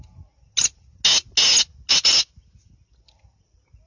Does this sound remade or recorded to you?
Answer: recorded